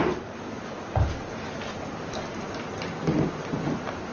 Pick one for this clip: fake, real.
real